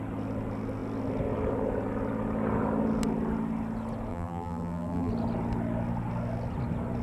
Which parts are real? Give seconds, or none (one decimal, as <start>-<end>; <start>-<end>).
0.0-4.1; 5.1-7.0